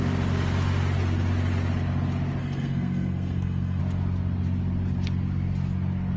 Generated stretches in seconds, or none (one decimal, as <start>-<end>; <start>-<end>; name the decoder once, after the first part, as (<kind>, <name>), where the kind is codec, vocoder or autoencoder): 2.4-3.8 (codec, SNAC)

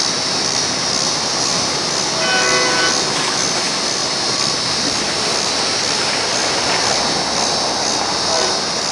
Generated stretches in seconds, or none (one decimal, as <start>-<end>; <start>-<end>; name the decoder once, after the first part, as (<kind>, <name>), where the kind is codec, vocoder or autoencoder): 0.0-1.3 (vocoder, BigVGAN v2); 2.9-8.9

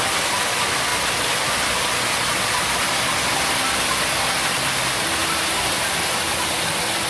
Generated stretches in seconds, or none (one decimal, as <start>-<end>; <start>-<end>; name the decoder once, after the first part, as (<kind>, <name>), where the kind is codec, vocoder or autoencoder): none